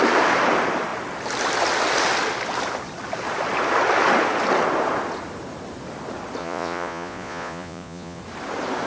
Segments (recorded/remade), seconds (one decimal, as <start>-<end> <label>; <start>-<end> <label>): 0.0-6.4 recorded; 6.4-8.2 remade; 8.2-8.9 recorded